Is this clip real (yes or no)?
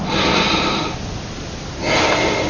yes